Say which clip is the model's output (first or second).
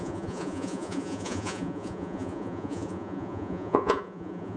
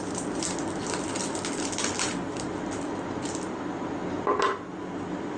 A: first